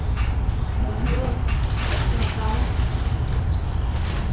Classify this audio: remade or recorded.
recorded